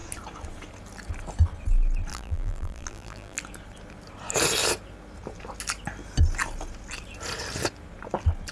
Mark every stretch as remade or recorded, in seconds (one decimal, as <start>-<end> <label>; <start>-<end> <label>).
0.0-2.1 recorded; 2.1-3.4 remade; 3.4-8.5 recorded